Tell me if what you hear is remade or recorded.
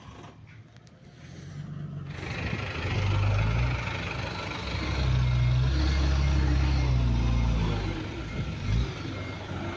recorded